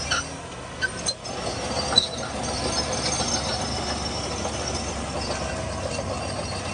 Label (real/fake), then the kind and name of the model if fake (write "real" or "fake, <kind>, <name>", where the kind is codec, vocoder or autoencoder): real